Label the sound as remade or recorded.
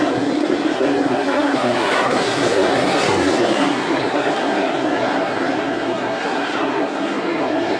remade